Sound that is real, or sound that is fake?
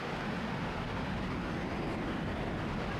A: real